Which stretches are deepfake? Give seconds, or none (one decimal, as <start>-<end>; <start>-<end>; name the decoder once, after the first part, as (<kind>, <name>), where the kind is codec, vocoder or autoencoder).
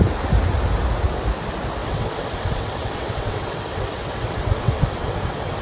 1.8-5.6 (vocoder, WaveNeXt)